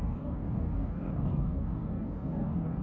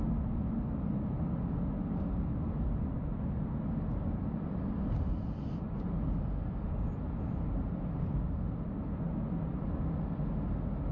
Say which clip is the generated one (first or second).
first